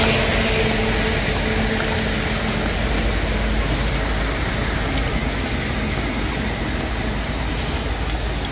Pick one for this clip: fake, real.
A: real